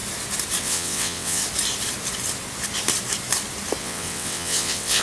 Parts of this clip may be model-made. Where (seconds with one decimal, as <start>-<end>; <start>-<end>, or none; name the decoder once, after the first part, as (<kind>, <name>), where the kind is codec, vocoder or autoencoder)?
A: 0.6-1.4 (vocoder, WaveNeXt); 3.8-5.0